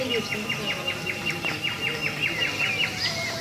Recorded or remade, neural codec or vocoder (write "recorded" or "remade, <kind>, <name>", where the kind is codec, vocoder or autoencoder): recorded